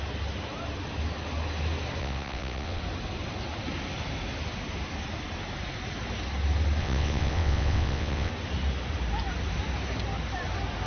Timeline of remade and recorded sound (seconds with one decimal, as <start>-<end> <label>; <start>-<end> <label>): 0.0-2.0 recorded; 2.0-2.8 remade; 2.8-6.8 recorded; 6.8-8.3 remade; 8.3-10.9 recorded